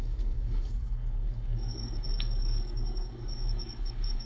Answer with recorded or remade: remade